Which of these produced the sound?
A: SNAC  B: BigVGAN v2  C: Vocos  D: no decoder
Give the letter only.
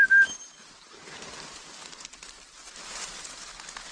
D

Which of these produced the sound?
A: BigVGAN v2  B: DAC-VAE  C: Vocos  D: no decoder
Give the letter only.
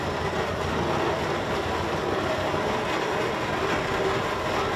D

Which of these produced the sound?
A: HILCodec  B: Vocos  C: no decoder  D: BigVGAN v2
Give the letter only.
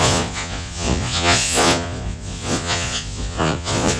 B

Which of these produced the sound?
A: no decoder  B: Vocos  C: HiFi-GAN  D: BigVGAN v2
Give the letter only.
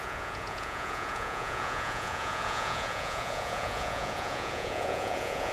B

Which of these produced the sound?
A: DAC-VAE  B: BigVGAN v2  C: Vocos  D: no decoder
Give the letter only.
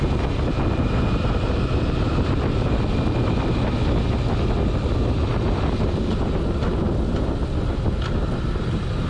D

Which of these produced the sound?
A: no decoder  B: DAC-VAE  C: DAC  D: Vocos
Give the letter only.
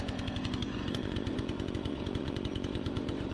D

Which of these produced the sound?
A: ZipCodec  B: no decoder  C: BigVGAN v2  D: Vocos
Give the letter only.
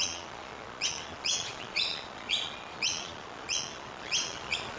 D